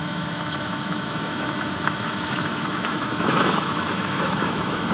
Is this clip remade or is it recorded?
remade